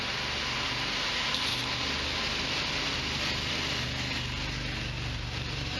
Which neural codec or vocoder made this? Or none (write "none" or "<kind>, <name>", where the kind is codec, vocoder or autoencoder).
none